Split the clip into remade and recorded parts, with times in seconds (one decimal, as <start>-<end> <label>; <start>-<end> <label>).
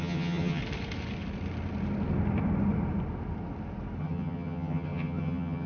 0.0-0.6 remade; 0.6-4.0 recorded; 4.0-5.7 remade